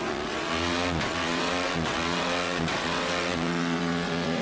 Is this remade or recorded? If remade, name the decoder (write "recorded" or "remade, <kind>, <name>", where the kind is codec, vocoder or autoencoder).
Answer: remade, vocoder, WaveNeXt